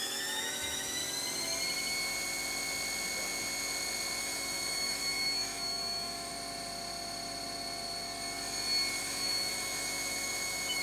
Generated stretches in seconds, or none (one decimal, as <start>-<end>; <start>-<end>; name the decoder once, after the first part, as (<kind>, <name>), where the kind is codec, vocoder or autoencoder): 0.0-1.0 (autoencoder, DAC-VAE); 4.2-6.3; 9.0-10.8